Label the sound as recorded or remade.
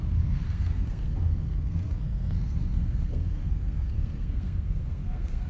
remade